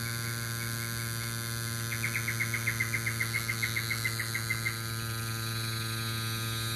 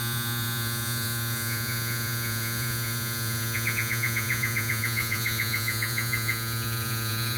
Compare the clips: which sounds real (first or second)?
first